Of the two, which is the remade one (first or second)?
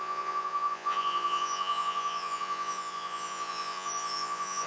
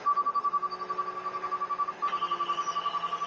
first